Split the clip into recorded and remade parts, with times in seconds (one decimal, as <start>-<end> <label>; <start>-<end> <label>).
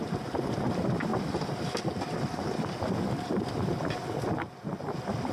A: 0.0-5.3 recorded